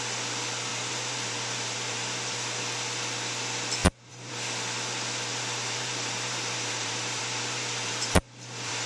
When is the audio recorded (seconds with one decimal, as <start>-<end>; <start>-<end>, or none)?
0.0-0.7; 2.6-3.8; 4.3-5.3